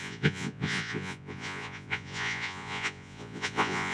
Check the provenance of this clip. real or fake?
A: fake